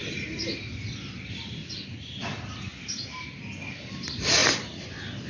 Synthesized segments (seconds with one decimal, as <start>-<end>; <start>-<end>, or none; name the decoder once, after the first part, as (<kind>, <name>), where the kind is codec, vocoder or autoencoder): 2.7-3.4 (vocoder, BigVGAN v2)